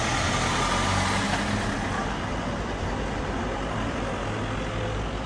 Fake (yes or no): no